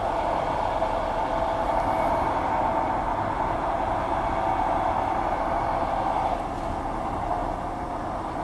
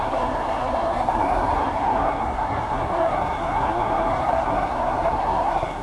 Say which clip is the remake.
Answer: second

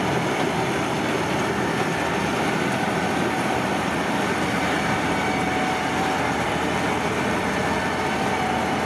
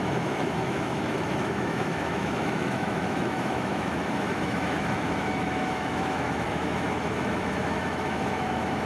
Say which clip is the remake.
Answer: second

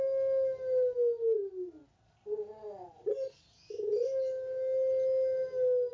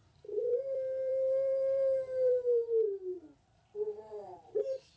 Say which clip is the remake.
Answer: second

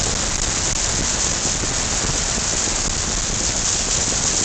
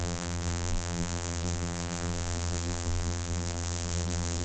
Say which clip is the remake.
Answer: second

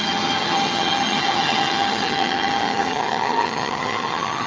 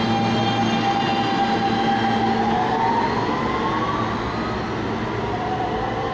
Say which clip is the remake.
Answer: first